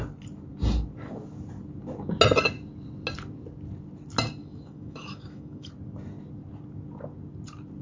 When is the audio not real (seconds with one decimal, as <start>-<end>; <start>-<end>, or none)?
4.4-5.7